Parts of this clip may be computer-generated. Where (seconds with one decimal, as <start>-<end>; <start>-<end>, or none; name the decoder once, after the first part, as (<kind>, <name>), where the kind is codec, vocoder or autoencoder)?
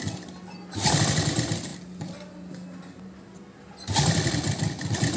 none